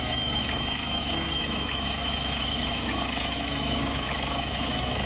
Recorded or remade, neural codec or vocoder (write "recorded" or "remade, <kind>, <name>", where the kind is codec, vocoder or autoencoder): remade, autoencoder, DAC-VAE